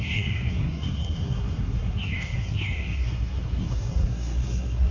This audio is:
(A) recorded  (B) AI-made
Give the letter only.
B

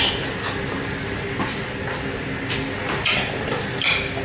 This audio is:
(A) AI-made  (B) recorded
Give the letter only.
B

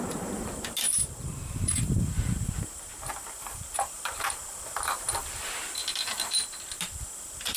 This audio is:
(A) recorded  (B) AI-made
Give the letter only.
B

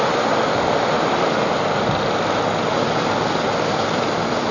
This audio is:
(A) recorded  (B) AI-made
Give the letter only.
A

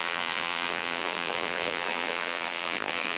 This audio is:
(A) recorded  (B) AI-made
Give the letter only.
B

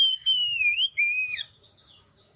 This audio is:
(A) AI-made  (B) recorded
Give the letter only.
A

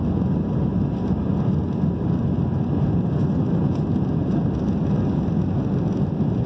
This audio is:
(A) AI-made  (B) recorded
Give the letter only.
B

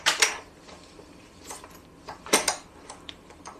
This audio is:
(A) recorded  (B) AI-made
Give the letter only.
B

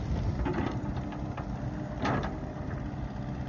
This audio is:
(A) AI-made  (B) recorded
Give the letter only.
B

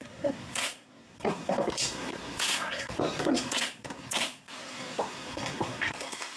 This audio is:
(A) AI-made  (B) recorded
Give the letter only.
A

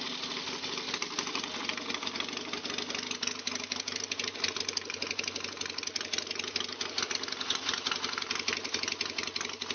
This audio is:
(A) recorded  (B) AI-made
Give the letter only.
A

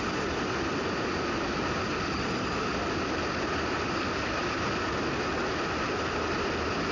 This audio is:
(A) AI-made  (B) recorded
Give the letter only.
B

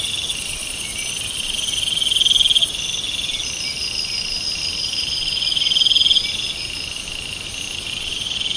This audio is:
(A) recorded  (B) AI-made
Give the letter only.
A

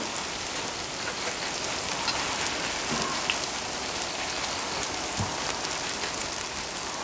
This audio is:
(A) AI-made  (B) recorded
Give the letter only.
B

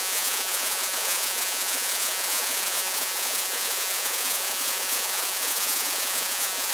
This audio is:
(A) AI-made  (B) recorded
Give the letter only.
A